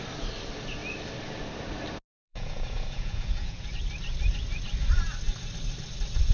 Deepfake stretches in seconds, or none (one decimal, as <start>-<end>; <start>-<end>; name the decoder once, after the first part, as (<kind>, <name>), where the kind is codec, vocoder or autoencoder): 2.1-3.7 (vocoder, Vocos)